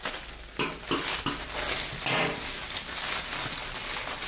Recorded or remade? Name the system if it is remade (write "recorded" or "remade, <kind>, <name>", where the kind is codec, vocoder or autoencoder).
recorded